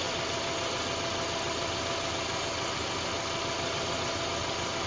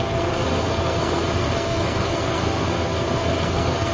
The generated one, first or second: second